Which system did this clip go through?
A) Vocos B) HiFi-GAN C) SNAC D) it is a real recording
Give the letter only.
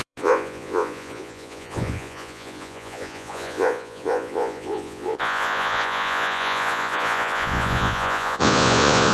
A